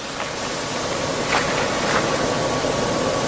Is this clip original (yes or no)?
yes